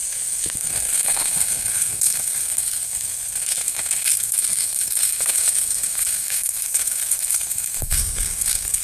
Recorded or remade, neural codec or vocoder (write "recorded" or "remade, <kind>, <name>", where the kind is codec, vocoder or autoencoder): remade, codec, SNAC